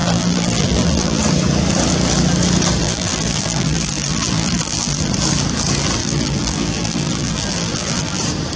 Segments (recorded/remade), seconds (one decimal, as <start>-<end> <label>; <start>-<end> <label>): 0.0-1.2 remade; 1.2-2.8 recorded; 2.8-5.1 remade; 5.1-6.0 recorded; 6.0-8.2 remade; 8.2-8.6 recorded